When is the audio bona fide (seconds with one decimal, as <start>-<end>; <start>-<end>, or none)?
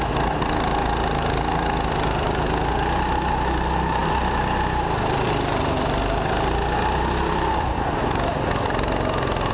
0.0-9.5